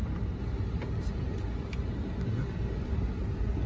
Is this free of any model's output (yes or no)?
yes